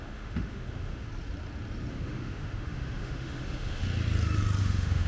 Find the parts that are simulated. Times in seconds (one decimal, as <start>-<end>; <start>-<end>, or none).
0.0-1.1; 1.9-3.8; 4.6-5.1